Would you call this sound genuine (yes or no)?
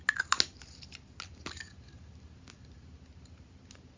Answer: yes